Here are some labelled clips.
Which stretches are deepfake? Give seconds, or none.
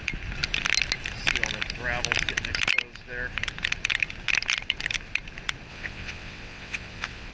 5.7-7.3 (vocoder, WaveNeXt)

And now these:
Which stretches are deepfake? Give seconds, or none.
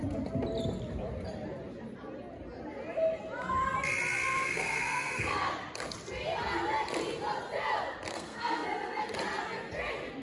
4.3-5.5 (codec, SNAC); 8.1-9.0